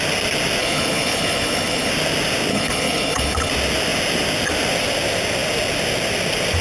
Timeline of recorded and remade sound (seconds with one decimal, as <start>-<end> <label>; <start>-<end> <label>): 0.0-0.6 recorded; 0.6-1.9 remade; 1.9-2.5 recorded; 2.5-3.5 remade; 3.5-6.6 recorded